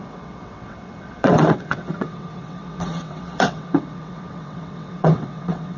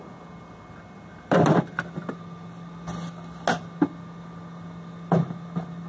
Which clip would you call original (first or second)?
second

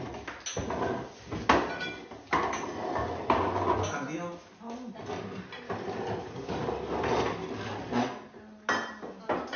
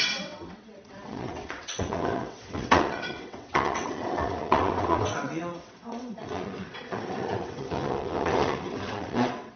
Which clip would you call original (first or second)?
first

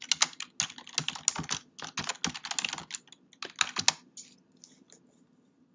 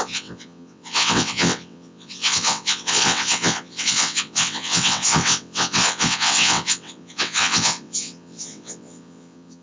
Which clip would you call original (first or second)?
first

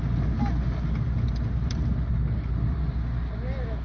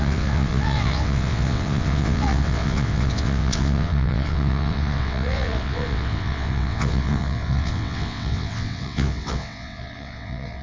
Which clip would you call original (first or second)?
first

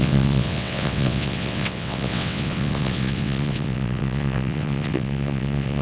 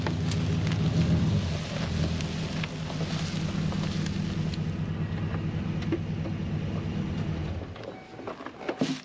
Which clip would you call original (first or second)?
second